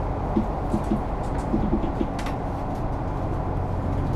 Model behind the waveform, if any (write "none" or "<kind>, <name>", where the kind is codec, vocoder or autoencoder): none